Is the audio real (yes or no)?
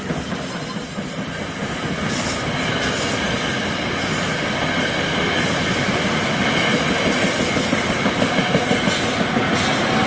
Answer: yes